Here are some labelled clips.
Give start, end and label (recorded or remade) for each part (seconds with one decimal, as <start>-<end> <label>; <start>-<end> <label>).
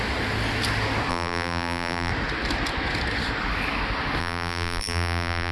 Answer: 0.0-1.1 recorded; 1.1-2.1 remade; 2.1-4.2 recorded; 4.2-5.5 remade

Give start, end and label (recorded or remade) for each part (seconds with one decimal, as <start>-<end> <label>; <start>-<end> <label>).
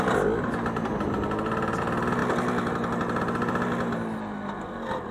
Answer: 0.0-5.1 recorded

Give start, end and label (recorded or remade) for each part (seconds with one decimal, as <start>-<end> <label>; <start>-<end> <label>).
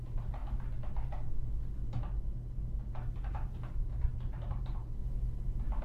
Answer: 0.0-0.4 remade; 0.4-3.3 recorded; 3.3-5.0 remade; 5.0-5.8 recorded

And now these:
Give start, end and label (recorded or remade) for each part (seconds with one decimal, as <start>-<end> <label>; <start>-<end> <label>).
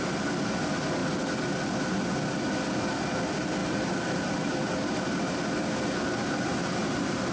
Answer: 0.0-3.6 recorded; 3.6-4.7 remade; 4.7-6.5 recorded; 6.5-7.3 remade